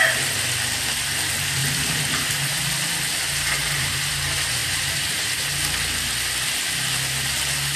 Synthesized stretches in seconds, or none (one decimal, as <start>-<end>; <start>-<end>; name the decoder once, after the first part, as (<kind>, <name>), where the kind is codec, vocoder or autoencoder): 3.6-4.1 (vocoder, BigVGAN v2); 4.6-5.4